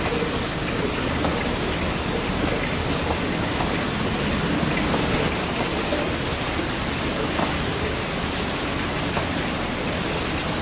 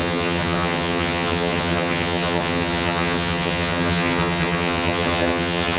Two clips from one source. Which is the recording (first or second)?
first